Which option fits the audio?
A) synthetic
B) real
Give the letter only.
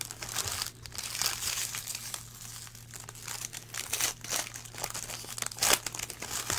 B